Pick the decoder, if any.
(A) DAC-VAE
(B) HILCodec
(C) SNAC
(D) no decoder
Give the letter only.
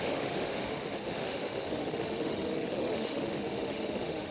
A